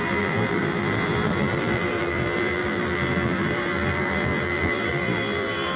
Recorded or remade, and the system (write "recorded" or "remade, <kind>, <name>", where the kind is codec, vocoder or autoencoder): remade, vocoder, BigVGAN v2